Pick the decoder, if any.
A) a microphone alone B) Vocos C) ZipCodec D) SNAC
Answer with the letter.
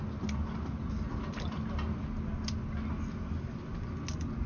A